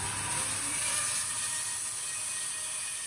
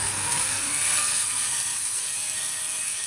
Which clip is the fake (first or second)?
second